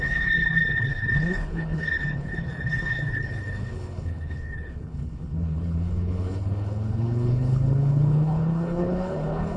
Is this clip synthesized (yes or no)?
yes